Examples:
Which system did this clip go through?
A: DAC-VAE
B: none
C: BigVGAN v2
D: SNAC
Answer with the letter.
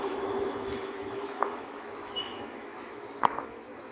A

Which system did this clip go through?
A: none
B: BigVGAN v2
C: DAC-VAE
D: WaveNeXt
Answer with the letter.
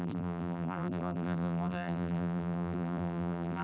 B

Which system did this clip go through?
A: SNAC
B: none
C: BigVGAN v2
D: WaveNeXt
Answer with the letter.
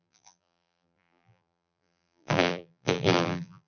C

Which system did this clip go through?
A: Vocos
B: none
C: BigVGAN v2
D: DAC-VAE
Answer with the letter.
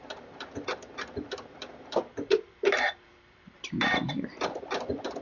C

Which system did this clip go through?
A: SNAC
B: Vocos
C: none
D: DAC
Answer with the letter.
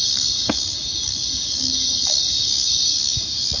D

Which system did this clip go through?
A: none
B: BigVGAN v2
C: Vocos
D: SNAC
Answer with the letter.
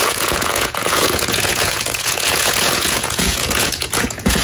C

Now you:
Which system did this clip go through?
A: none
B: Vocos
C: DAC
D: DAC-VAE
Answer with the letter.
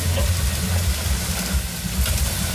A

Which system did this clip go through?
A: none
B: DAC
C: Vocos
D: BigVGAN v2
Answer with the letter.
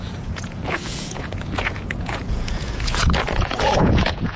C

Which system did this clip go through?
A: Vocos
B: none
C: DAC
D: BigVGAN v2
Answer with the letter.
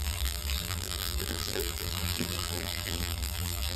D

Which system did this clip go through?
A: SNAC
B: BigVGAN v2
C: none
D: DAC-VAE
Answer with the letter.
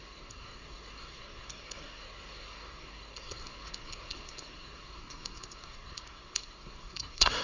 A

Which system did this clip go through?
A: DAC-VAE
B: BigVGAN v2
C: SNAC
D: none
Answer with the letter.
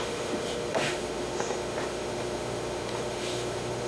A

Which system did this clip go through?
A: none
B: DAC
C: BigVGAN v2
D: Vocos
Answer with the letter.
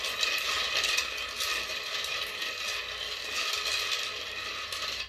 A